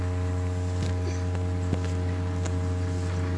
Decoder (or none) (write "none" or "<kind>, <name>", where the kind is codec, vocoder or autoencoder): none